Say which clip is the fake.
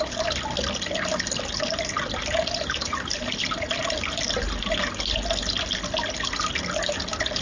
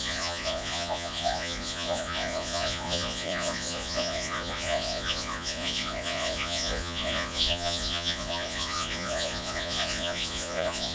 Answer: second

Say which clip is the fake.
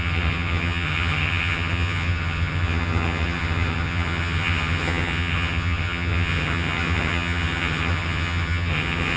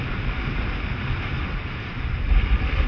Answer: first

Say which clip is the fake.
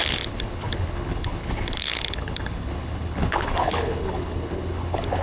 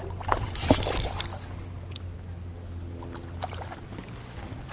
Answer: first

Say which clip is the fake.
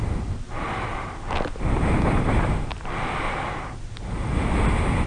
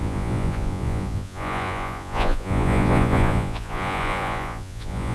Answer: second